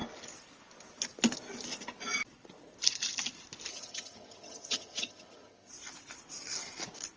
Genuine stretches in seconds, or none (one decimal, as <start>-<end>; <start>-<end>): 0.0-3.7; 5.7-7.2